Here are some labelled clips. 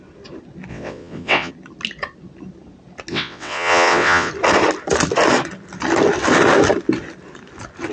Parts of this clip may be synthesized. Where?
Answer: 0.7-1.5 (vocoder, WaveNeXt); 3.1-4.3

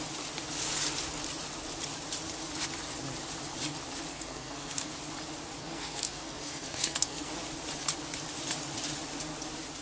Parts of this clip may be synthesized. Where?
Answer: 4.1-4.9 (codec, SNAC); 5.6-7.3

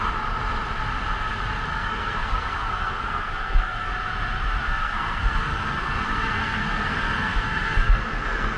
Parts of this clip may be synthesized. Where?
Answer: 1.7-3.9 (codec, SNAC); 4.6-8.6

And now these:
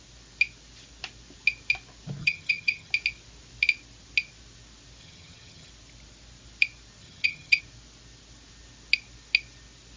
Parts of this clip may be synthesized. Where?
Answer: 2.2-2.9 (vocoder, HiFi-GAN); 5.0-5.7; 7.0-7.6

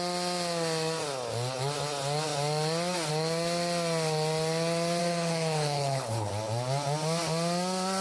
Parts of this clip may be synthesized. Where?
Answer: 5.0-6.3 (codec, HILCodec)